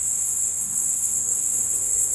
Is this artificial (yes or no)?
yes